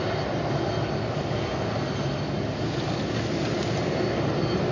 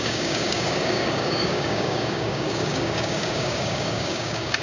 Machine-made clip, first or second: second